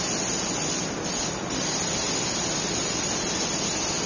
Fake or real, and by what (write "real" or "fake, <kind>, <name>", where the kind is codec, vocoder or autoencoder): real